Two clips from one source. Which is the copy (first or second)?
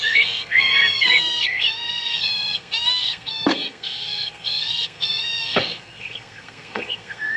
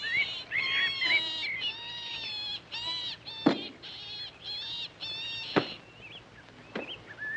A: first